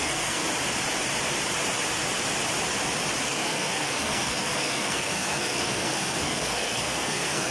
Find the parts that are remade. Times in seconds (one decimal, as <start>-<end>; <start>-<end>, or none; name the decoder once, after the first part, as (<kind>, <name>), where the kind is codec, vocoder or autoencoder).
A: 0.0-0.4 (codec, SNAC); 3.2-7.5